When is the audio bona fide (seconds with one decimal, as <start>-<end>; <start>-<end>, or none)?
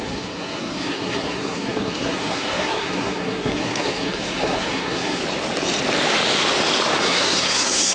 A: 5.2-7.0